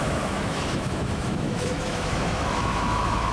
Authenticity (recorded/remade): remade